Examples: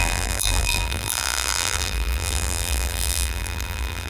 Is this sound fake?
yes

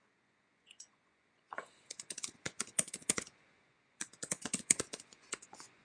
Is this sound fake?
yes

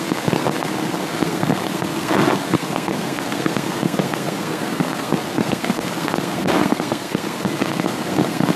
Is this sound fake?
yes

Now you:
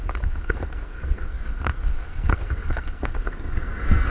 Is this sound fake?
yes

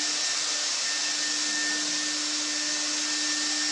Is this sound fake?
no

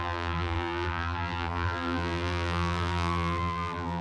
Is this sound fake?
yes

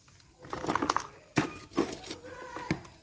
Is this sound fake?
no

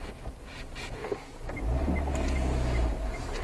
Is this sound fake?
no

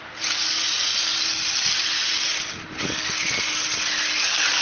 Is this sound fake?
no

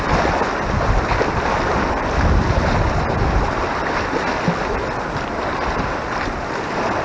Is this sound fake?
no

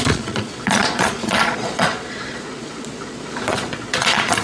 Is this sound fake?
yes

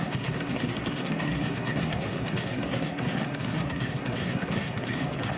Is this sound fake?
yes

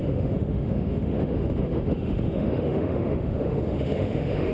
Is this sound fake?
yes